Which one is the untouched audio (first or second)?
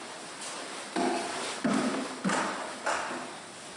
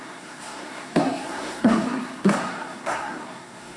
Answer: first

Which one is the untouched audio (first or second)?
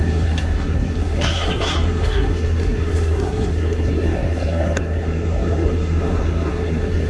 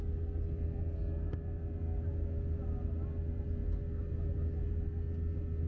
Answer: second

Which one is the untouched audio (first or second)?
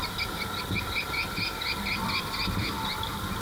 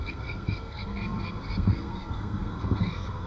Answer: first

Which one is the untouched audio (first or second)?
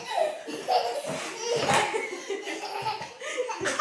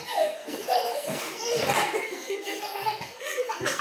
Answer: first